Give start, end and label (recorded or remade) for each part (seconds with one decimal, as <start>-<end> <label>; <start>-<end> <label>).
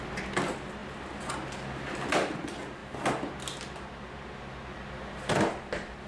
0.0-6.1 recorded